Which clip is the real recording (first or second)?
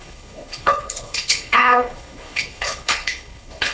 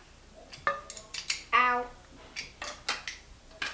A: second